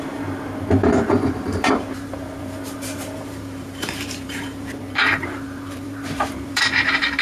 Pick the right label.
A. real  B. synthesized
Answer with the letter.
B